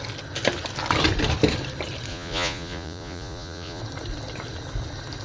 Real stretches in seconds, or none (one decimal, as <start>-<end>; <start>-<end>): 0.0-2.1; 3.8-5.2